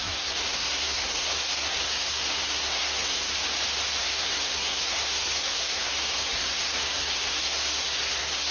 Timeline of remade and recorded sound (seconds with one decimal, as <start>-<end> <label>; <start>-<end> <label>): 0.0-3.3 remade; 3.3-4.0 recorded; 4.0-8.5 remade